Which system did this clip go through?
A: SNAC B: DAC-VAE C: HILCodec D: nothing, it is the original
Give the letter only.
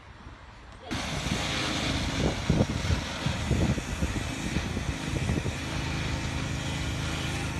D